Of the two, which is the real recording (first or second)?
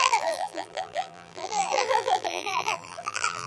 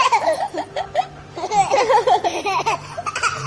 second